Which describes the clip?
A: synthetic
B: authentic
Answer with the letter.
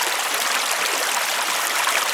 B